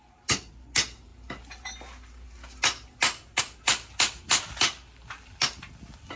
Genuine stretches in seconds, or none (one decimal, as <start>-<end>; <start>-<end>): 0.0-6.2